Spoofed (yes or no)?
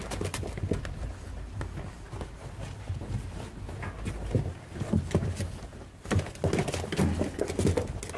no